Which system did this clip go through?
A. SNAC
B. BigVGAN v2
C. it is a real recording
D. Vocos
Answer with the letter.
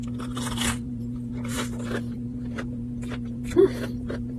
B